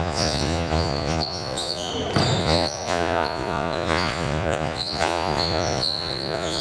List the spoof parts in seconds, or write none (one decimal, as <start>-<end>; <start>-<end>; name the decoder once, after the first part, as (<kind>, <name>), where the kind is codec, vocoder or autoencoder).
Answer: 0.0-1.9 (vocoder, Vocos); 2.4-6.6